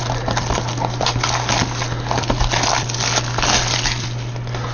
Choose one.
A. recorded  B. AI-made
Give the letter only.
A